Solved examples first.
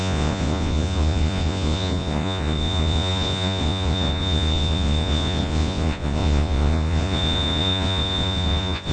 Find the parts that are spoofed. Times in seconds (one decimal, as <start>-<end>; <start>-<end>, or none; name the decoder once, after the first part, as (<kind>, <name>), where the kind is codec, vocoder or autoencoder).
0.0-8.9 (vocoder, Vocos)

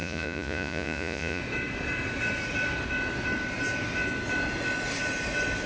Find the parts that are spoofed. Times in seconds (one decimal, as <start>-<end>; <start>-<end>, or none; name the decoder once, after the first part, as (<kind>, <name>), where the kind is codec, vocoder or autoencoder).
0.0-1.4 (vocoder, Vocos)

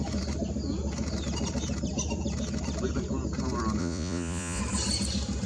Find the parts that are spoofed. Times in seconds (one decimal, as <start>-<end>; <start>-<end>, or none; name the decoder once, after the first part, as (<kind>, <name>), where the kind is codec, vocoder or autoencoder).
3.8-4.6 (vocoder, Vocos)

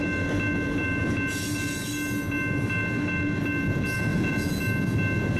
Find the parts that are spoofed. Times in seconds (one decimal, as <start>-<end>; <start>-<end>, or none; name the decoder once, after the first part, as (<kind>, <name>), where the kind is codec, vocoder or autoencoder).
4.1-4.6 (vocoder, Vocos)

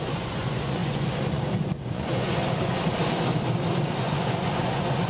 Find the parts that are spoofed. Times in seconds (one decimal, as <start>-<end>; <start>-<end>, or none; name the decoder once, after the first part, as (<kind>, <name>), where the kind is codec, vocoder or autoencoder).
0.0-2.8 (vocoder, Vocos); 4.0-5.1

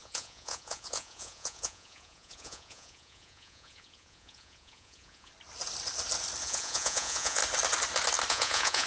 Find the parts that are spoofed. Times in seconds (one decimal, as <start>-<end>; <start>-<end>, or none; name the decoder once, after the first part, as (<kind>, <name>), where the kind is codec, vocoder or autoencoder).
0.0-5.3 (vocoder, Vocos); 6.4-7.4; 8.3-8.9

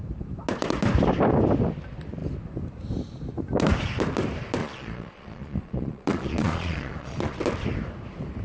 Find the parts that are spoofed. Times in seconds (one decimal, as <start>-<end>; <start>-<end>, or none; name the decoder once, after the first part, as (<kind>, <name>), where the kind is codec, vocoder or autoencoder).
4.6-7.4 (vocoder, Vocos)